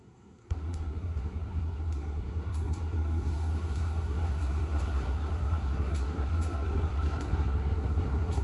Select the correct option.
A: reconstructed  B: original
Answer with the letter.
A